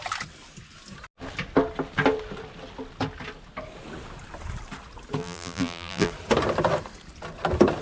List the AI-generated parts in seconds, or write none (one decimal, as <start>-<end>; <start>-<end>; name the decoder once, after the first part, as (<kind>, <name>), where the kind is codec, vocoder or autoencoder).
5.2-6.1 (vocoder, BigVGAN v2)